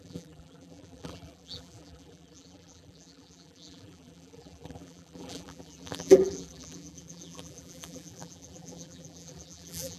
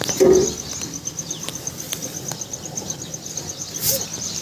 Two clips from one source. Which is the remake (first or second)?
first